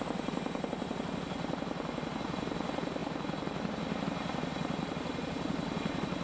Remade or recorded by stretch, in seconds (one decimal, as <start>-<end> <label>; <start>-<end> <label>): 0.0-6.2 recorded